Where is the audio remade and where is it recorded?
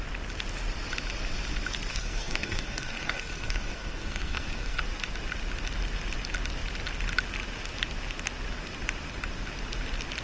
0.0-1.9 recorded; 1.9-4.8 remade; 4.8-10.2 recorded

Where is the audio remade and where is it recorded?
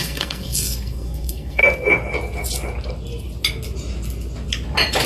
0.0-1.6 remade; 1.6-5.1 recorded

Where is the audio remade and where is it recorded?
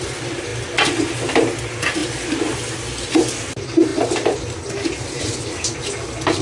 0.0-6.4 recorded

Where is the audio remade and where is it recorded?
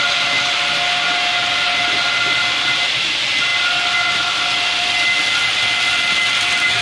0.0-6.8 recorded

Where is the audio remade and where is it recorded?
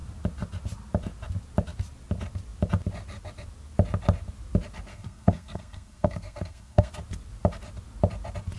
0.0-4.9 recorded; 4.9-6.9 remade; 6.9-8.6 recorded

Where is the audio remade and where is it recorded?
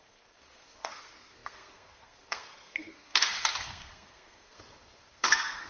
0.0-5.7 remade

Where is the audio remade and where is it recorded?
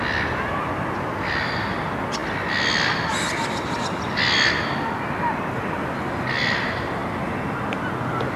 0.0-8.4 recorded